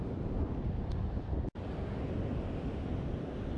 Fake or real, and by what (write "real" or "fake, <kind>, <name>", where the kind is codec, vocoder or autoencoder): real